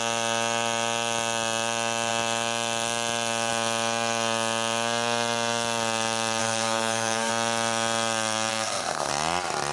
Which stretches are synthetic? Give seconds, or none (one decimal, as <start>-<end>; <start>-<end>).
6.4-7.3; 8.5-9.1